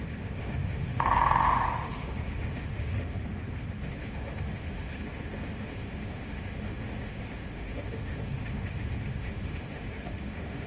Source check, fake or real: fake